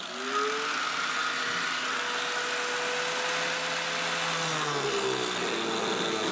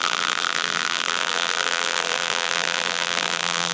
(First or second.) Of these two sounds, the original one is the first